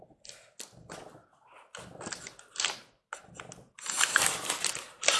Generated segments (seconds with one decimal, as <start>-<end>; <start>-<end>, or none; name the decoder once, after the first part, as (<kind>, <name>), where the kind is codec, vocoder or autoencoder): none